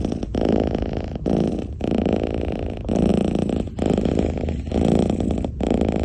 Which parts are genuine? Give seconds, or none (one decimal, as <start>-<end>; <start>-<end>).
0.0-6.0